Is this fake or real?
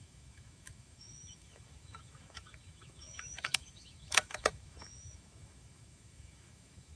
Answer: fake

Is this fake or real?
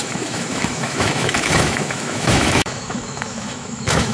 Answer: fake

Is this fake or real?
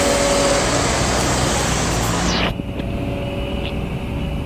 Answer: real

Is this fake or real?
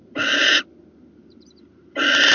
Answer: real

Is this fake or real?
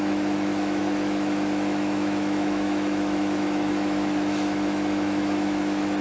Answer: fake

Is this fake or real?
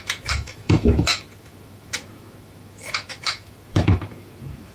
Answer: fake